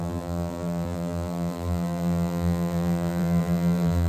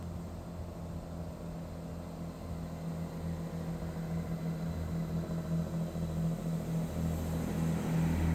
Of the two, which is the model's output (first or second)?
first